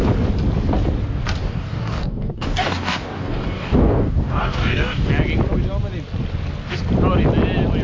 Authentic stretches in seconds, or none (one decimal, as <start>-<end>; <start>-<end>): 0.0-1.4; 5.1-7.8